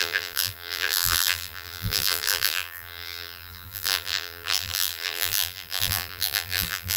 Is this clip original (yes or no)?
no